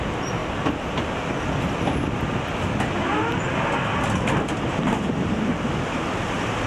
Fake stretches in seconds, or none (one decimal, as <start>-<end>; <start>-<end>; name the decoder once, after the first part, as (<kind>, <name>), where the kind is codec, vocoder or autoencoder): none